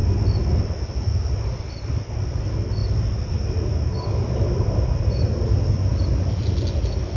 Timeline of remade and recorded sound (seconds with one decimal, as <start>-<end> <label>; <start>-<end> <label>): 0.0-7.2 recorded